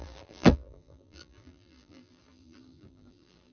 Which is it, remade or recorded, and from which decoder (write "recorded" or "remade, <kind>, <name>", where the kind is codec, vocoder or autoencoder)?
remade, vocoder, BigVGAN v2